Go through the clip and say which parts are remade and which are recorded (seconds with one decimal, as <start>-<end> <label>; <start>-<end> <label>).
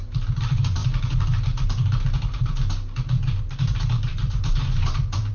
0.0-0.8 remade; 0.8-3.4 recorded; 3.4-5.3 remade